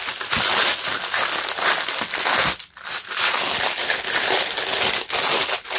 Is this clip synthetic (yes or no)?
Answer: no